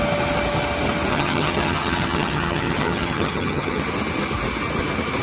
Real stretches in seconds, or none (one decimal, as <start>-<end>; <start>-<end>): 0.0-1.1; 3.8-5.2